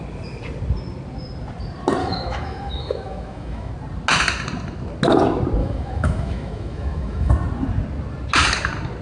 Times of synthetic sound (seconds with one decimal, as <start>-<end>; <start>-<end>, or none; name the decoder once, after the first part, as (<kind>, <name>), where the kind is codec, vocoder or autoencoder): 2.0-3.7 (autoencoder, DAC-VAE); 5.6-7.3